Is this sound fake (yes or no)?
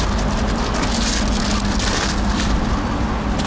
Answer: no